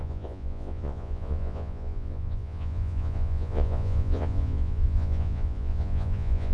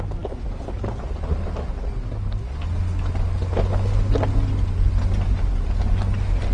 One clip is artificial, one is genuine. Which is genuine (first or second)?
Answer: second